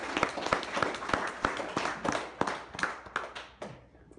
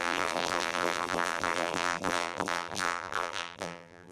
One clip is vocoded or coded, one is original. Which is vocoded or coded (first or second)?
second